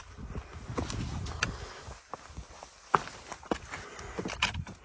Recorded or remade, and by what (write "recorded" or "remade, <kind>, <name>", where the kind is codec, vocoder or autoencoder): recorded